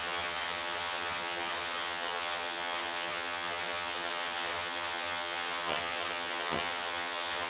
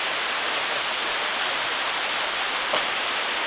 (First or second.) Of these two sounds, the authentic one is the second